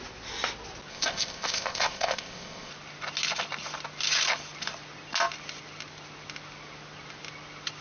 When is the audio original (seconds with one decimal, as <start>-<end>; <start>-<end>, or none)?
0.0-0.9; 2.7-7.8